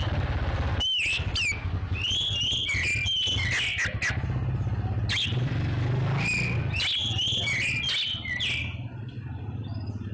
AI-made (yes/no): no